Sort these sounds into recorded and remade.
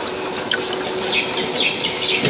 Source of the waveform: recorded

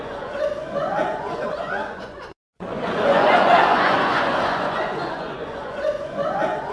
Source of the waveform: remade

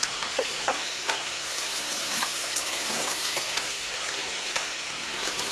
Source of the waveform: remade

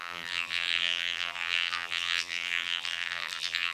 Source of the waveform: remade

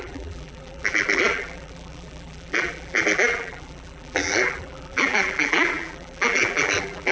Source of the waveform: remade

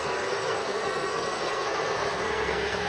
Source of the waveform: remade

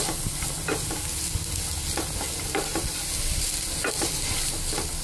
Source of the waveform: recorded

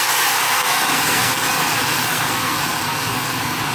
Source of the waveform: remade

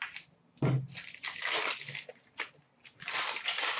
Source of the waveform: recorded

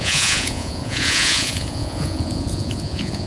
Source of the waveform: remade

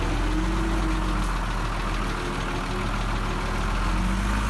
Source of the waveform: recorded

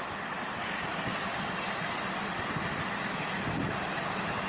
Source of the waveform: recorded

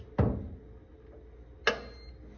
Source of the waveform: recorded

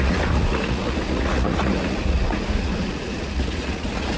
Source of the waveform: remade